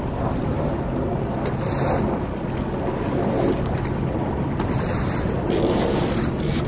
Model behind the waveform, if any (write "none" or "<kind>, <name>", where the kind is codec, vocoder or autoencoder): none